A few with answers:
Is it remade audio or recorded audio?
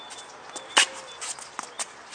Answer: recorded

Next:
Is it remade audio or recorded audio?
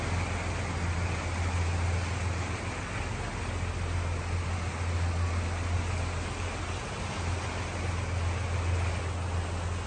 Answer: recorded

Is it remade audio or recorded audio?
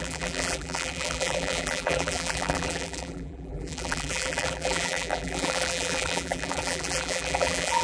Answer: remade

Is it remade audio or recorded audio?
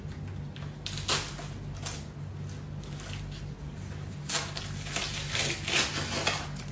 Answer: recorded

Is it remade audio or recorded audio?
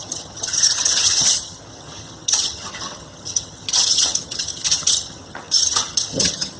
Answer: remade